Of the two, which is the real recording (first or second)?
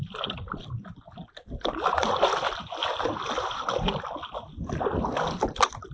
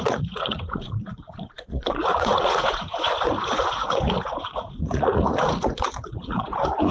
first